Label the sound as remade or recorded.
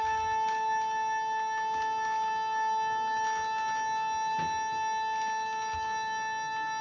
recorded